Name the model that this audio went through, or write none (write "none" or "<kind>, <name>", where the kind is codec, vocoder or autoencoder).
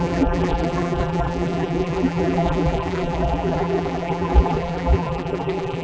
vocoder, BigVGAN v2